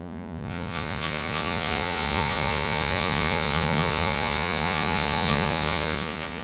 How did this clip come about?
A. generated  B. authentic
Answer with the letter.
A